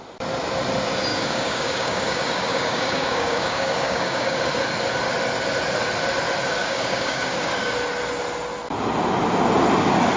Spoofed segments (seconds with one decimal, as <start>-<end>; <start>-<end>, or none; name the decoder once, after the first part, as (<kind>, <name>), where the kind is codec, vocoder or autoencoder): 1.1-4.4 (codec, DAC); 6.6-7.7